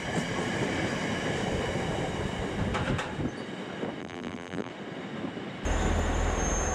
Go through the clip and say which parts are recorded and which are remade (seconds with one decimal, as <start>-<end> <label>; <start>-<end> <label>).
0.0-4.0 recorded; 4.0-4.7 remade; 4.7-6.7 recorded